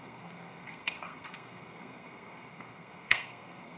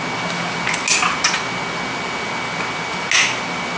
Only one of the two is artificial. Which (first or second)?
first